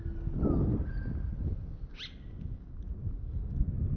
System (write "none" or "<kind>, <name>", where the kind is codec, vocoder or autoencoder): none